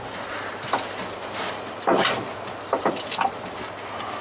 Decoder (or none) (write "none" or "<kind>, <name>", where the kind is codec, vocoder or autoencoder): none